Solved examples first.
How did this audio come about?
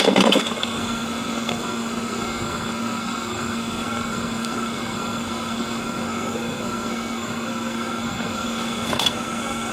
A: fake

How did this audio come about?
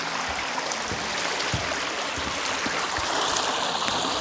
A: real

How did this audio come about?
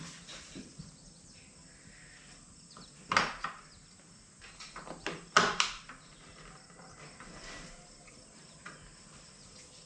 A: real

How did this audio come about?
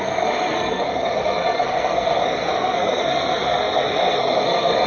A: fake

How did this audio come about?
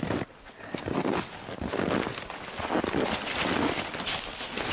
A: real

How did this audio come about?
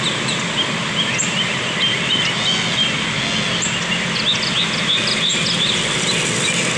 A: real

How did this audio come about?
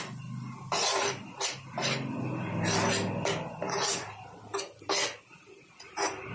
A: real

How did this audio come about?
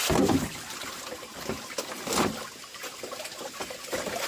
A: real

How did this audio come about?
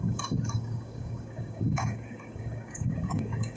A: fake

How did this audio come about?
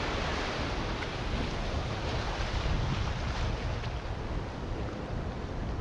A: real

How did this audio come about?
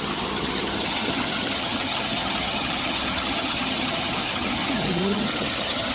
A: fake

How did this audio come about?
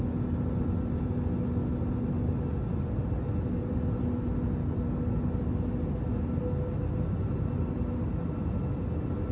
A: real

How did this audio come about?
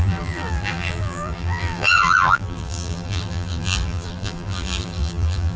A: fake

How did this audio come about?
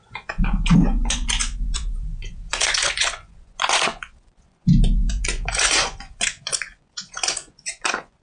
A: fake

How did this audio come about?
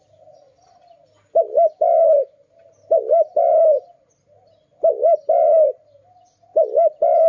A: real